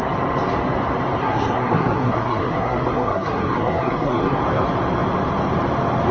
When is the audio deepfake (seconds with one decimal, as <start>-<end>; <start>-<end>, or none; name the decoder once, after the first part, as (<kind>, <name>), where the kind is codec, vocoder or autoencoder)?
1.2-4.4 (codec, SNAC)